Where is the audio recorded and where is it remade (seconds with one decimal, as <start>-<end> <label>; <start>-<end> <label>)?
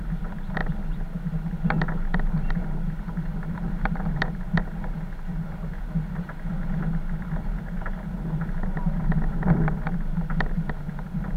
0.0-11.4 recorded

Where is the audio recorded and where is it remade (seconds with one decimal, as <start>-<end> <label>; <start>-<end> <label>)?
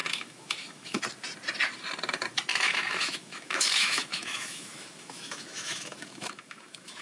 0.0-1.0 remade; 1.0-2.5 recorded; 2.5-7.0 remade